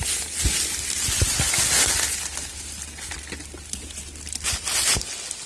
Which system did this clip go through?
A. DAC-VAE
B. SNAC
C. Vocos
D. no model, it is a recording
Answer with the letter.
D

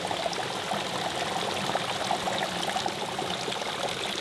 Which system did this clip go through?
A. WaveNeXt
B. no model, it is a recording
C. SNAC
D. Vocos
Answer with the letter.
B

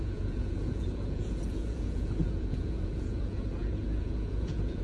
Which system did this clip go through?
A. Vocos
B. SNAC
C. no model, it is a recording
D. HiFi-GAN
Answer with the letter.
A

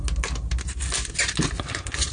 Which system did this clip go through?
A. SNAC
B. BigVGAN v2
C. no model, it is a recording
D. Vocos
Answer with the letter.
C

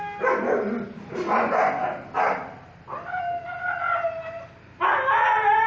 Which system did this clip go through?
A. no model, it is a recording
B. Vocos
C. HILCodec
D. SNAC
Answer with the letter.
A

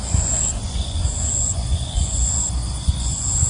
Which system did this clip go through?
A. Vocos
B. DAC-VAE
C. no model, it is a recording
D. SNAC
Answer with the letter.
A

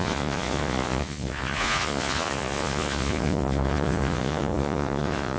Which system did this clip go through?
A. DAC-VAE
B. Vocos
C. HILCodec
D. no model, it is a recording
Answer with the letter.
B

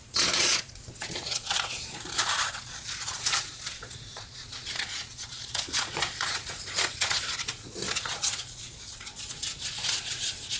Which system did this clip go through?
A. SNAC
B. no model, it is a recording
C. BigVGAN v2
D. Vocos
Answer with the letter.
D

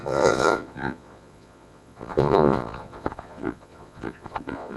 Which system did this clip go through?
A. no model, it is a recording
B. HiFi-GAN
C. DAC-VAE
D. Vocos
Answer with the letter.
D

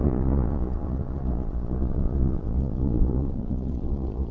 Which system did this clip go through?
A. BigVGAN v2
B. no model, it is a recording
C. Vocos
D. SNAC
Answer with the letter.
C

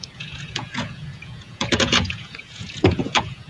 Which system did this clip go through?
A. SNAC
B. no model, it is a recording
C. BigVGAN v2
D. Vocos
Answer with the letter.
D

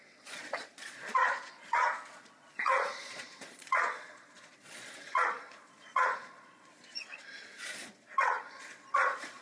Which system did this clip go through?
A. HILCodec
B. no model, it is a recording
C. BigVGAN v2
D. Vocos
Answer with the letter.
D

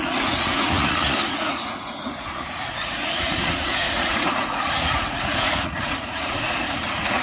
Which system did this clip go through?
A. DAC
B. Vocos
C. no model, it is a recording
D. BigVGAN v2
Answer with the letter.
B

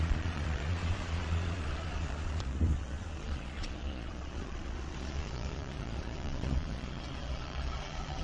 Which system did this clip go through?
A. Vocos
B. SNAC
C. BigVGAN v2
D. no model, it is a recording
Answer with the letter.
A